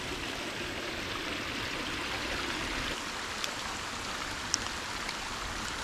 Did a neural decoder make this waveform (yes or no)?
no